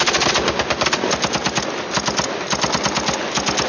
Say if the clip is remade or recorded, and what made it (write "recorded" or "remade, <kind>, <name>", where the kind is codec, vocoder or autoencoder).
recorded